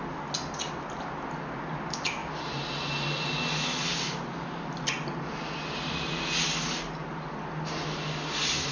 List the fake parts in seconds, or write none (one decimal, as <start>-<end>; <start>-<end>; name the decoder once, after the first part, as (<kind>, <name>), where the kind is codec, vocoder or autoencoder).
none